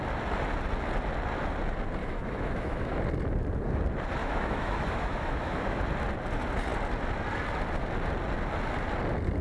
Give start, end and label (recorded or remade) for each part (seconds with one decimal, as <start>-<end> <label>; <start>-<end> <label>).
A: 0.0-2.0 recorded; 2.0-3.0 remade; 3.0-4.2 recorded; 4.2-5.8 remade; 5.8-9.4 recorded